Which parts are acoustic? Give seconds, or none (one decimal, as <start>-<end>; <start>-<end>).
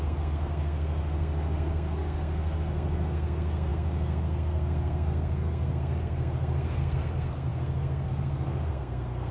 none